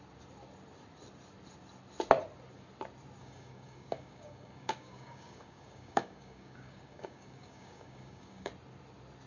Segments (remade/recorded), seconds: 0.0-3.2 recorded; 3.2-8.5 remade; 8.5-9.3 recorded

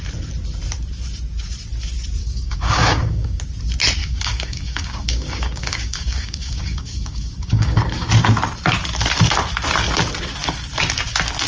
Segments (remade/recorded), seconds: 0.0-2.2 recorded; 2.2-3.4 remade; 3.4-4.0 recorded; 4.0-8.1 remade; 8.1-11.5 recorded

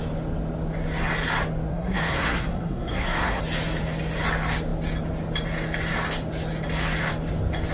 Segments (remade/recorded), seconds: 0.0-1.7 recorded; 1.7-3.4 remade; 3.4-7.7 recorded

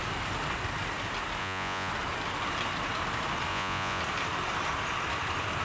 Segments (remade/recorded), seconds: 0.0-1.4 recorded; 1.4-1.9 remade; 1.9-3.5 recorded; 3.5-4.0 remade; 4.0-5.6 recorded

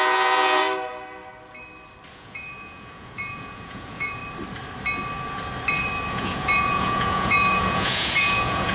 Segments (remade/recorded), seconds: 0.0-0.6 remade; 0.6-2.1 recorded; 2.1-4.2 remade; 4.2-6.1 recorded; 6.1-8.7 remade

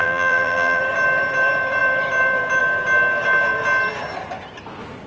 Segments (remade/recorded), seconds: 0.0-0.8 remade; 0.8-5.1 recorded

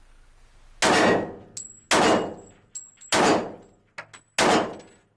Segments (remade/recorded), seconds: 0.0-5.2 recorded

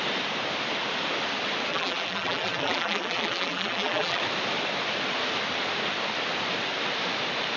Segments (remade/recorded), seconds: 0.0-1.7 recorded; 1.7-4.2 remade; 4.2-7.6 recorded